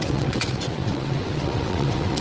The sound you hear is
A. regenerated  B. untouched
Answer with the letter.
A